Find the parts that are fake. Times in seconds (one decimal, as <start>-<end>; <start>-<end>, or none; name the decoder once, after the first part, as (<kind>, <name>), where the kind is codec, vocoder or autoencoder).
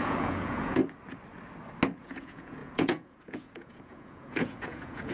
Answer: 0.0-0.8 (vocoder, Vocos); 2.0-5.1